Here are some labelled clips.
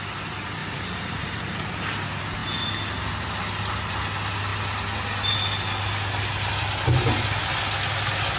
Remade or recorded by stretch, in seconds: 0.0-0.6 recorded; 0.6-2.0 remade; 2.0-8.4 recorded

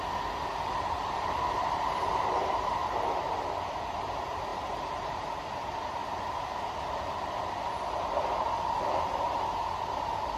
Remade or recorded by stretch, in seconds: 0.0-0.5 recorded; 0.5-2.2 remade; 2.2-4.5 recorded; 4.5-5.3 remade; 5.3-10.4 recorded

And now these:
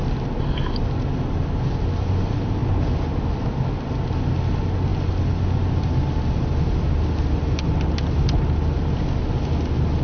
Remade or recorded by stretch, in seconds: 0.0-10.0 recorded

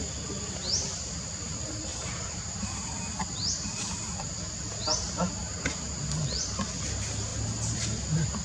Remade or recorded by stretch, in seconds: 0.0-1.9 recorded; 1.9-2.7 remade; 2.7-8.4 recorded